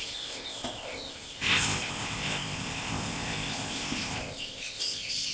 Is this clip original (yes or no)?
no